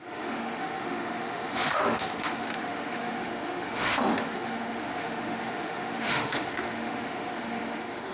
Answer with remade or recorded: remade